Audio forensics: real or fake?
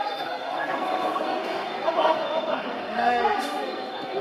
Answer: fake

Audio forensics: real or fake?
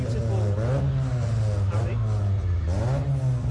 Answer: real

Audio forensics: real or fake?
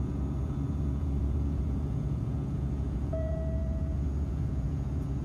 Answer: fake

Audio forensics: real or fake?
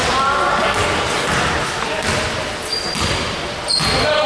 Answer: real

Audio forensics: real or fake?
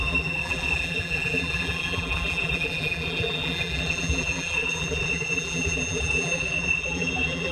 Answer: fake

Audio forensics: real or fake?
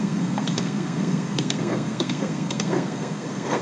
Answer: fake